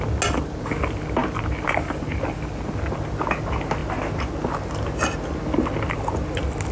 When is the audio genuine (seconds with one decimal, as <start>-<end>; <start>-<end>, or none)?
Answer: 0.0-6.7